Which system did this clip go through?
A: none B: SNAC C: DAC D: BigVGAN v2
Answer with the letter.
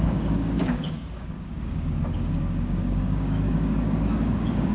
C